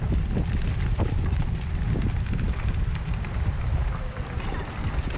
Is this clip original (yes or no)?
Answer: no